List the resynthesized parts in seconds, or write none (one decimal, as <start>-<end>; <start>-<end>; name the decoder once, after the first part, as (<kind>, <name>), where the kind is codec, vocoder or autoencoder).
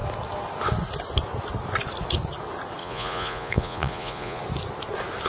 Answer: 2.8-4.4 (vocoder, Vocos)